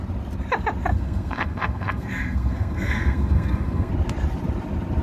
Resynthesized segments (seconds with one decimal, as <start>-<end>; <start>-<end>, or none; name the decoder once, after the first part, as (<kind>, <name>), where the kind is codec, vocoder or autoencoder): 0.9-3.9 (codec, SNAC)